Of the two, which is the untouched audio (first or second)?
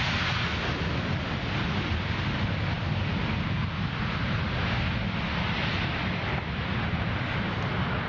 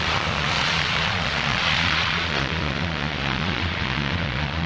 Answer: first